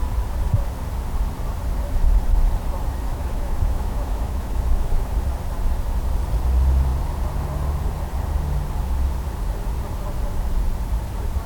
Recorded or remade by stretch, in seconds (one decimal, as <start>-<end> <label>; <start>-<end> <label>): 0.0-3.1 recorded; 3.1-5.1 remade; 5.1-11.5 recorded